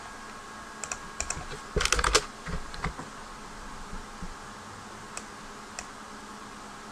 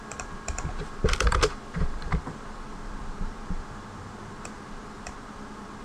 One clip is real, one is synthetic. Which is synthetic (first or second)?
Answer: second